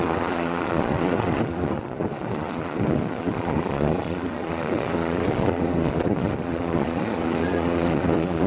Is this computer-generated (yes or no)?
yes